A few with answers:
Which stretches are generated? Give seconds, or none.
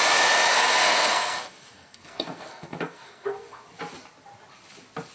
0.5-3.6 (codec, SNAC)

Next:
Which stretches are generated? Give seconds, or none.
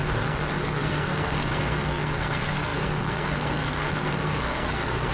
0.0-5.1 (codec, SNAC)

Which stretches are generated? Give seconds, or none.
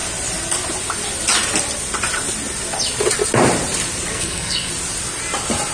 4.1-4.7 (codec, SNAC)